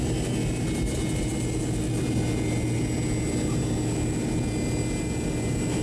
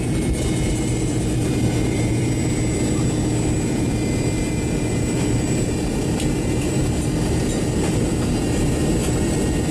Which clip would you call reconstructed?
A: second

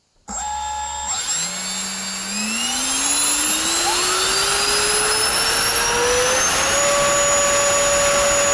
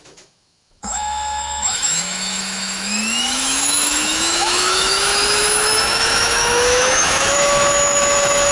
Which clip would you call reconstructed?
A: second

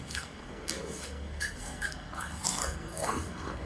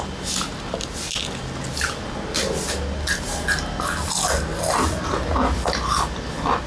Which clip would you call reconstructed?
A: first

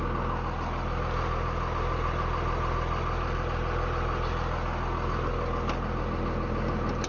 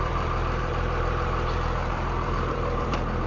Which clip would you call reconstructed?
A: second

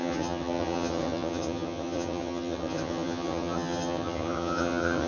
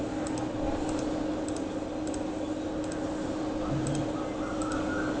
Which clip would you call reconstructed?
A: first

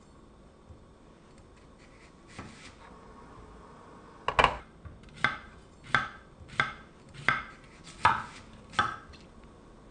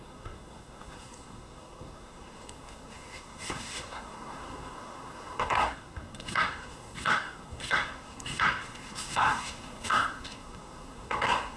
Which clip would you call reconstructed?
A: second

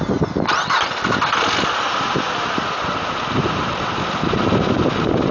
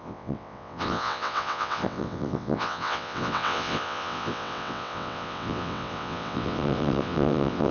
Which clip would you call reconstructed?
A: second